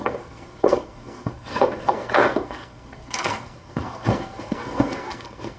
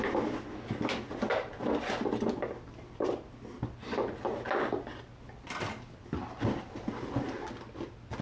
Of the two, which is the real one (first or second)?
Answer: second